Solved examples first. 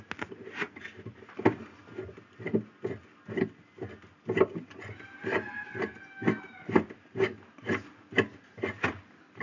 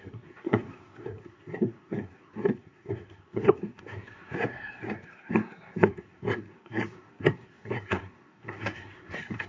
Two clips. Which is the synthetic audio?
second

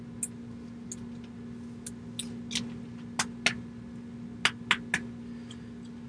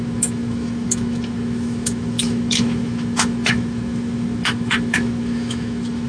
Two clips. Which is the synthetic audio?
second